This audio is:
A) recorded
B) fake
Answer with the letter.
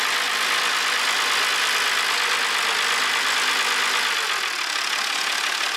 A